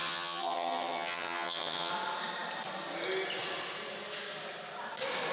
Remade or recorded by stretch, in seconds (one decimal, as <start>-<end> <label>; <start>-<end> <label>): 0.0-1.9 remade; 1.9-5.3 recorded